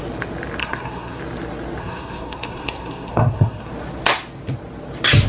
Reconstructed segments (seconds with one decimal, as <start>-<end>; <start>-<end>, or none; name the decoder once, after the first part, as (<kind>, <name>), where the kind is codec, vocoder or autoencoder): 0.6-1.2 (codec, SNAC); 1.8-3.7